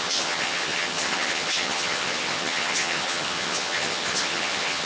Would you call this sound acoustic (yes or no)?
no